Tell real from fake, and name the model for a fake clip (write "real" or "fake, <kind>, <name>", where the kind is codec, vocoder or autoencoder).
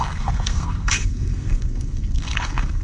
fake, codec, SNAC